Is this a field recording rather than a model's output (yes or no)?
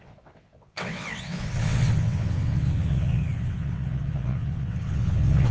no